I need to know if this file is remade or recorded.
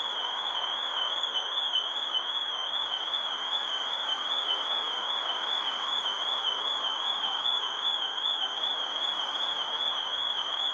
remade